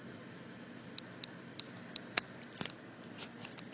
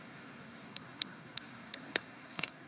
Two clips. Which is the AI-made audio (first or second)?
second